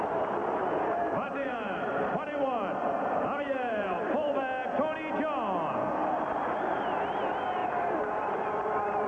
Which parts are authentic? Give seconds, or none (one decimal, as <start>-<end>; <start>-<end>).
0.0-0.4; 4.4-6.0; 6.8-7.6; 8.5-9.1